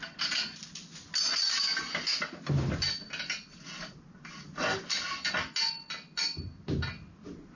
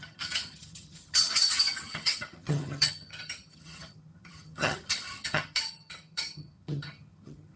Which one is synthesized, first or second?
second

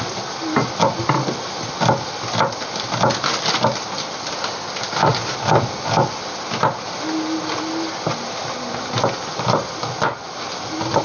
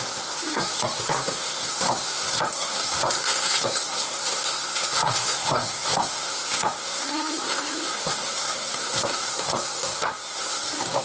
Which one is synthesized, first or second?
second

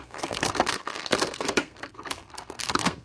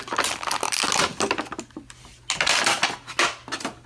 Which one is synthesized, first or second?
first